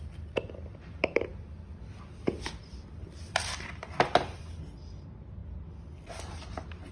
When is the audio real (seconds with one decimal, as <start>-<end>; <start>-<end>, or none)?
0.0-6.9